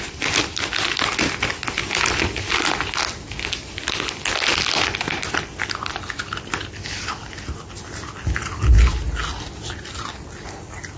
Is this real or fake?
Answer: real